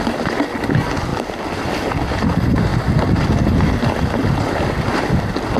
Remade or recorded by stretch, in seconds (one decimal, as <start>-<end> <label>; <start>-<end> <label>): 0.0-5.6 recorded